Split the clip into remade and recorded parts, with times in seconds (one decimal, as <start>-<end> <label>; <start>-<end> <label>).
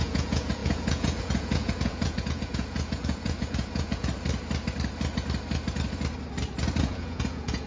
0.0-4.1 remade; 4.1-6.8 recorded; 6.8-7.7 remade